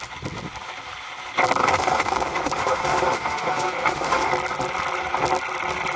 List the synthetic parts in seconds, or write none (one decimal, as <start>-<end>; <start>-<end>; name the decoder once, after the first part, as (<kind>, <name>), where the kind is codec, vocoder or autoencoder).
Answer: 1.6-4.3 (autoencoder, DAC-VAE)